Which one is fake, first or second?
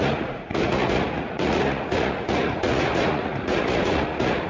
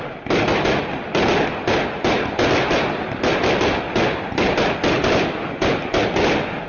first